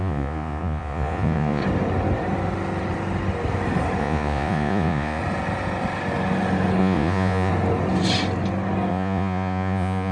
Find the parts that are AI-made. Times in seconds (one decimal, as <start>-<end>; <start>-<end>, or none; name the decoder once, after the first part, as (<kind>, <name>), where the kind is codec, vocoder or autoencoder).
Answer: 0.0-1.6 (vocoder, Vocos); 4.0-5.2; 6.8-7.5; 8.9-10.1